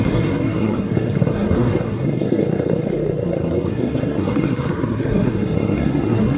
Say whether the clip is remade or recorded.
remade